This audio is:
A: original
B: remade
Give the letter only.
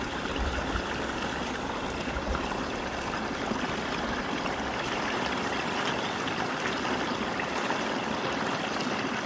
A